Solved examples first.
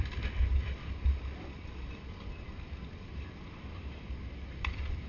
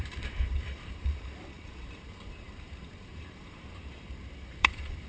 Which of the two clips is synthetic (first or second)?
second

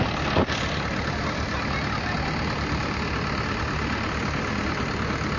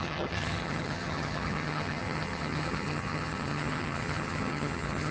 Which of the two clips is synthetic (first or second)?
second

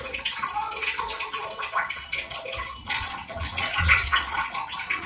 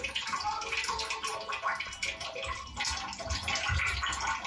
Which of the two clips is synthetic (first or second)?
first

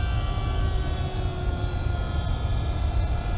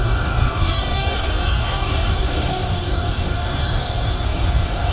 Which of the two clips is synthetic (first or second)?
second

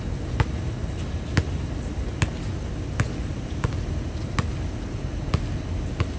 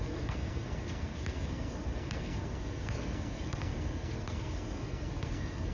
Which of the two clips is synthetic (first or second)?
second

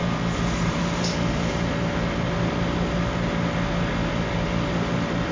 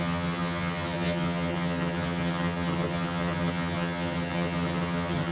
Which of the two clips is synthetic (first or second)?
second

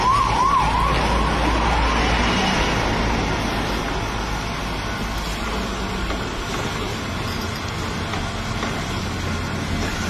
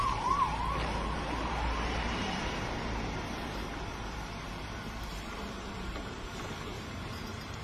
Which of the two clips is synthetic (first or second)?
second